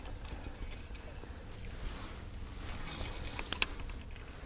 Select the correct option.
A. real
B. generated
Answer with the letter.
A